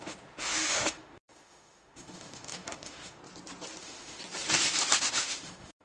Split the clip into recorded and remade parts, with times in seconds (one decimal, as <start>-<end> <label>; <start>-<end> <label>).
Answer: 0.0-3.2 remade; 3.2-3.8 recorded; 3.8-4.2 remade; 4.2-5.0 recorded; 5.0-5.8 remade